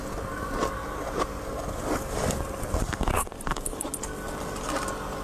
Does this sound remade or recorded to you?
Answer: recorded